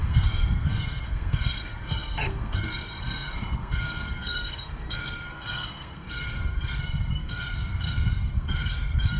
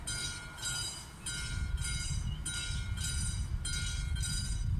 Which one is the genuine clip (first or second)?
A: second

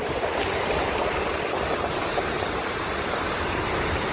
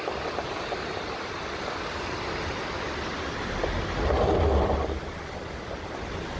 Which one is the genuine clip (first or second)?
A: second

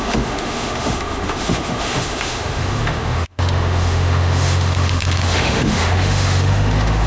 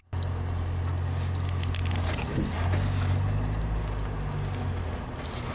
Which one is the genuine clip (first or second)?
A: second